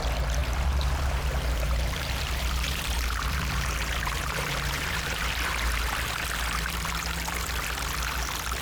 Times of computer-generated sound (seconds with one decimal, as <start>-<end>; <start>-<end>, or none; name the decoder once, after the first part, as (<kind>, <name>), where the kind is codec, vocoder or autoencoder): 0.4-5.3 (vocoder, BigVGAN v2)